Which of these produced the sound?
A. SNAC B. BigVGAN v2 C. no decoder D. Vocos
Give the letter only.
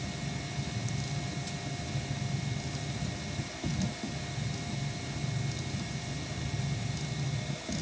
C